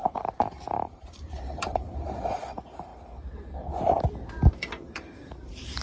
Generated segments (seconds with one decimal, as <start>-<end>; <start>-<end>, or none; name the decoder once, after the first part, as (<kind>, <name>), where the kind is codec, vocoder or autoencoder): 0.0-2.9 (vocoder, BigVGAN v2); 4.5-5.8